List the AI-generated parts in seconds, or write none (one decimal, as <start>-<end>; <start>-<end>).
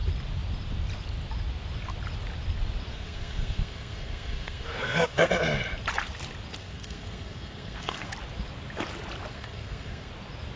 2.9-5.3; 6.6-8.1; 9.3-10.1